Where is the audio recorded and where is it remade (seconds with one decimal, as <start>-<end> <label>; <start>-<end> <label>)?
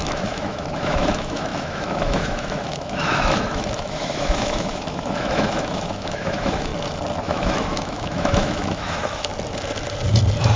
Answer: 0.0-6.7 remade; 6.7-7.2 recorded; 7.2-9.3 remade; 9.3-10.6 recorded